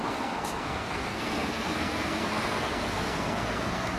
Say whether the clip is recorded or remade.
remade